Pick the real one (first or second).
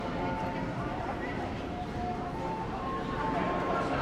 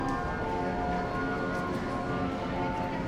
second